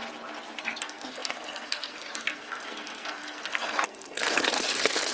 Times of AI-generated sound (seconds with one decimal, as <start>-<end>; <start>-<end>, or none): 0.6-5.1